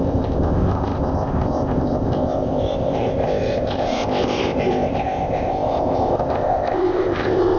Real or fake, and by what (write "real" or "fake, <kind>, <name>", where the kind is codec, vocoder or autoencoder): fake, codec, ZipCodec